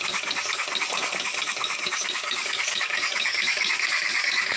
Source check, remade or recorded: remade